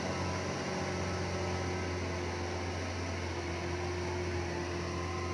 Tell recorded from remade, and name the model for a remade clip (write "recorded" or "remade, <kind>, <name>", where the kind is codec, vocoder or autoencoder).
recorded